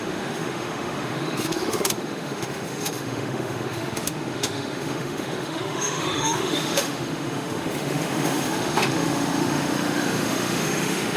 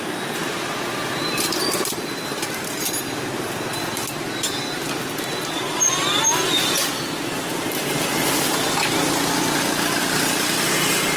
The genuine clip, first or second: second